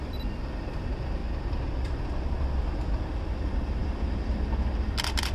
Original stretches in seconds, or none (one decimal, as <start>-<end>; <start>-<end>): 0.0-1.2; 2.0-3.8; 4.4-5.3